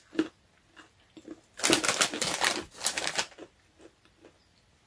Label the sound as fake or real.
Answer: real